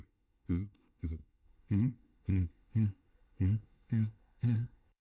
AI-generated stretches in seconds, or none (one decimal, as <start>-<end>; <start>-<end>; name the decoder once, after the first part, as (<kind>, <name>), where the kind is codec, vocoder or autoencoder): 0.0-5.0 (codec, SNAC)